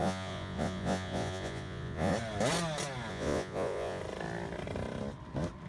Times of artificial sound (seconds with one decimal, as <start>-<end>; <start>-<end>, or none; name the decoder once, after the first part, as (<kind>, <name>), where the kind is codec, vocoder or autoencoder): 0.0-2.1 (vocoder, Vocos); 3.1-4.0